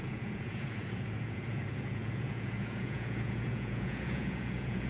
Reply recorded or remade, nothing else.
remade